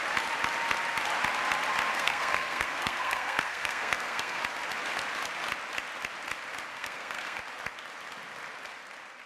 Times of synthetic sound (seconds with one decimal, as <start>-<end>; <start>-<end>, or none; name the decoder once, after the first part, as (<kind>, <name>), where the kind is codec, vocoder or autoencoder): 1.9-4.4 (codec, SNAC); 6.7-7.4